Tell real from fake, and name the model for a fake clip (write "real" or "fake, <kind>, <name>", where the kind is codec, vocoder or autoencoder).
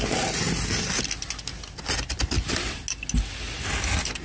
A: real